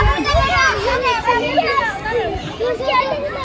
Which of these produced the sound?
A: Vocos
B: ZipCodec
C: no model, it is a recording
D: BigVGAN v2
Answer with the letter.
C